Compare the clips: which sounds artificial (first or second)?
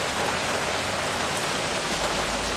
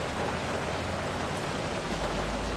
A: first